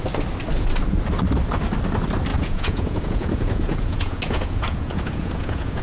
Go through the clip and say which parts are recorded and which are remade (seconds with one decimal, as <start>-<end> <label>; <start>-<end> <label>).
0.0-2.3 recorded; 2.3-5.8 remade